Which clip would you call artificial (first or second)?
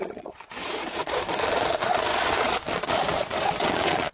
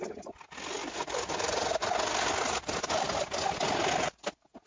first